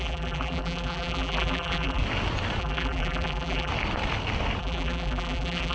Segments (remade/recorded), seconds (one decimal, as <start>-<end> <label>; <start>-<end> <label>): 0.0-2.0 remade; 2.0-2.6 recorded; 2.6-3.7 remade; 3.7-4.6 recorded; 4.6-5.7 remade